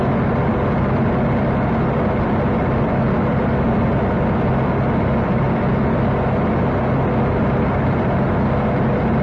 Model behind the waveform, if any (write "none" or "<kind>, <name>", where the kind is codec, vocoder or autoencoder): none